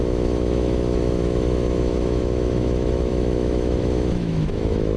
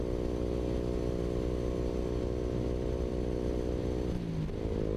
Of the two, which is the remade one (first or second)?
first